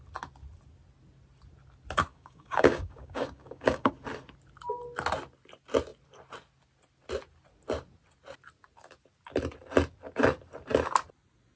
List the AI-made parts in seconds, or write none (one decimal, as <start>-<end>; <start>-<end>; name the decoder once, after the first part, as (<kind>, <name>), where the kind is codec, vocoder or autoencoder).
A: 2.1-3.9 (codec, DAC)